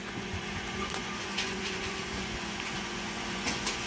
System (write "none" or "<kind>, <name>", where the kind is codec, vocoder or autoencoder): vocoder, Vocos